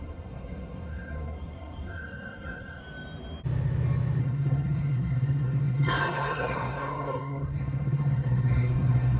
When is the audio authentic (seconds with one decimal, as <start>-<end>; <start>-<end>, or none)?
2.8-4.2